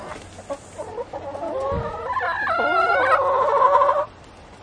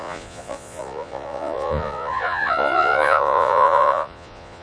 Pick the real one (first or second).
first